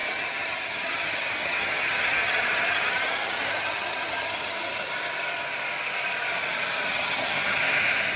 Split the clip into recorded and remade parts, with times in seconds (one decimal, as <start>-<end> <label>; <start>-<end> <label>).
0.0-4.9 remade; 4.9-6.9 recorded; 6.9-7.6 remade; 7.6-8.2 recorded